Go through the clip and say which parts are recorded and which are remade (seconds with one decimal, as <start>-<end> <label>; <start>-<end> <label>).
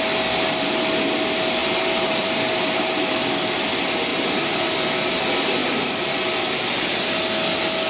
0.0-1.6 recorded; 1.6-3.2 remade; 3.2-4.1 recorded; 4.1-5.1 remade; 5.1-5.6 recorded; 5.6-6.2 remade; 6.2-7.9 recorded